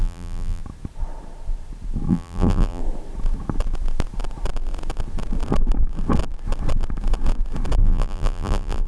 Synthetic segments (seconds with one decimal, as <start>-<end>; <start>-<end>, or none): 0.0-0.6; 2.1-2.8; 7.8-8.9

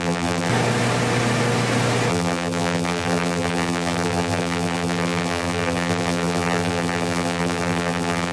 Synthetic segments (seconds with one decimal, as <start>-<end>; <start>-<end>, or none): 0.0-0.5; 2.1-8.3

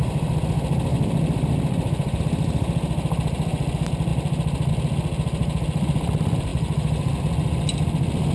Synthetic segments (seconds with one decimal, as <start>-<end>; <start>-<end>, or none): 0.9-2.2; 4.1-4.7; 5.4-6.1

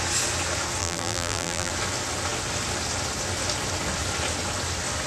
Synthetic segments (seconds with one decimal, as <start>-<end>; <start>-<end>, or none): 0.8-1.7